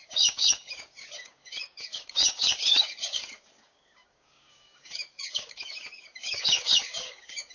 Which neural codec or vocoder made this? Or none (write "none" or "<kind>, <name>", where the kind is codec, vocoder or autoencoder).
codec, DAC